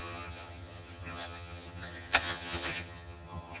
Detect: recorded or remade remade